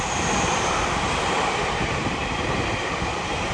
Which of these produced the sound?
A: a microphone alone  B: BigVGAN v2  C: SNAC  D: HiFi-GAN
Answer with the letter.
B